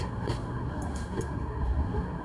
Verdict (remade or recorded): remade